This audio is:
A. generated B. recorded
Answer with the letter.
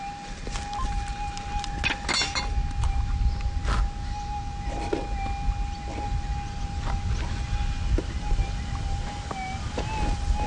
B